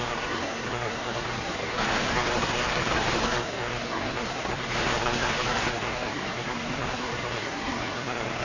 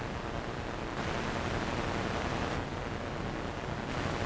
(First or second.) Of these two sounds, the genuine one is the second